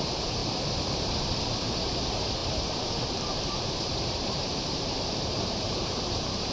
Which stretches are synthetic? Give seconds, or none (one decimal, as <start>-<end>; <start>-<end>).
0.0-0.4; 1.0-6.5